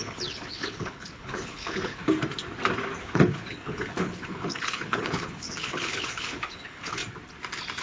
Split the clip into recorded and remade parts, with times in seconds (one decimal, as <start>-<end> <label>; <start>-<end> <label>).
0.0-2.0 remade; 2.0-3.0 recorded; 3.0-7.0 remade; 7.0-7.8 recorded